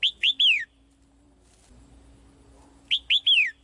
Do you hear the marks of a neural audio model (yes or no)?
no